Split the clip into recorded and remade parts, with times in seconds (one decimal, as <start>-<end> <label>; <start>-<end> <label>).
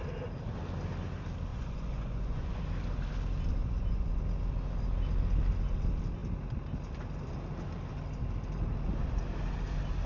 0.0-1.5 recorded; 1.5-2.6 remade; 2.6-3.6 recorded; 3.6-4.2 remade; 4.2-10.1 recorded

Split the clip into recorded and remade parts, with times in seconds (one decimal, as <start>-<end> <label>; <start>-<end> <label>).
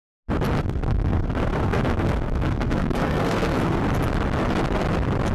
0.0-0.6 recorded; 0.6-3.8 remade; 3.8-5.3 recorded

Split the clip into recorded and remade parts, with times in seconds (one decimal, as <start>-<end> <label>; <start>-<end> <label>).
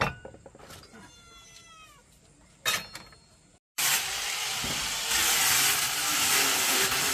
0.0-7.1 recorded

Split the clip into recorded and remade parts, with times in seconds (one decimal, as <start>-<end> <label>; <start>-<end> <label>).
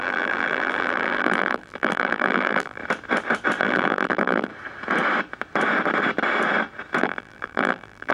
0.0-2.8 remade; 2.8-3.6 recorded; 3.6-4.5 remade; 4.5-7.0 recorded; 7.0-8.1 remade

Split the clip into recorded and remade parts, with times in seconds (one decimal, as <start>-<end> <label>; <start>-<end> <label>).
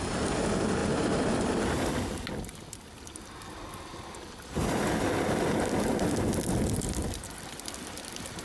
0.0-8.4 recorded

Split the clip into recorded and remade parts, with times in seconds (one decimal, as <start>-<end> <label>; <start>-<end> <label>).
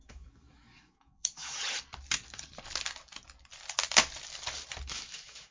0.0-1.6 remade; 1.6-4.9 recorded; 4.9-5.5 remade